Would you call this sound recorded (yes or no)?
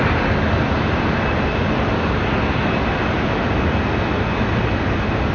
yes